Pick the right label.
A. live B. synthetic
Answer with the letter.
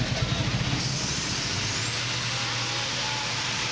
A